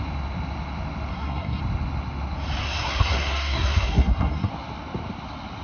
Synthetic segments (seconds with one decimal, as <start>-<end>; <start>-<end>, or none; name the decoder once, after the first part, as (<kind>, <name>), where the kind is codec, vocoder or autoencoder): 1.1-1.6 (codec, SNAC); 2.6-4.5